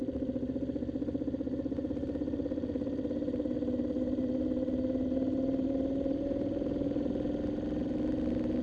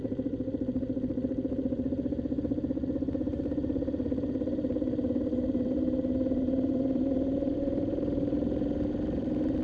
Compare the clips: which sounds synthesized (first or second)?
second